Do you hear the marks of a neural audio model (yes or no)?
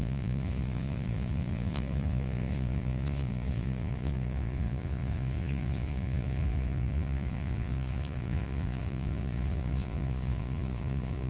yes